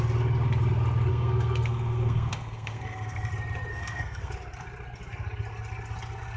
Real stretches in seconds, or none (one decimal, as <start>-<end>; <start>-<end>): 0.0-1.1; 3.3-3.7; 4.3-6.4